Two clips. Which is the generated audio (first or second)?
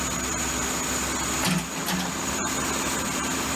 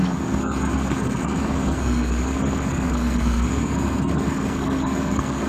second